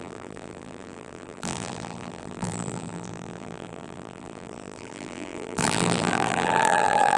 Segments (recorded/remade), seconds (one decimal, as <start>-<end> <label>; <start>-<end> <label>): 0.0-7.2 remade